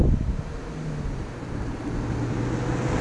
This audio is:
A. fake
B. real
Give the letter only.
B